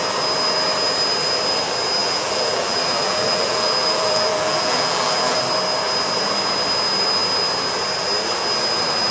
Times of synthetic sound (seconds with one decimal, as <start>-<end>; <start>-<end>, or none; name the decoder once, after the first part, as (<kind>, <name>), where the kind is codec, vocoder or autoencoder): 2.0-5.4 (vocoder, BigVGAN v2)